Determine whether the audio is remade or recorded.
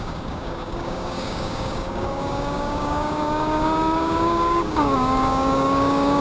remade